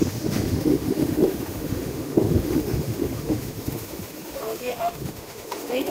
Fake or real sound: fake